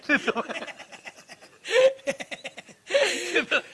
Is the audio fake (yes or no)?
no